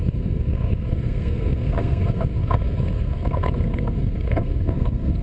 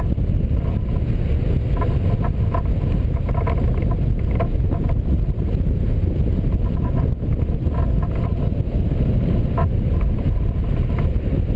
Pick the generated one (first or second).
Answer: first